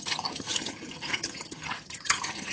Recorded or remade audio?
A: remade